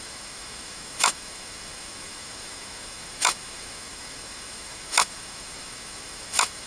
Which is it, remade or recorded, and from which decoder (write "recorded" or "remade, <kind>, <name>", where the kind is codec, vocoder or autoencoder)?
remade, autoencoder, DAC-VAE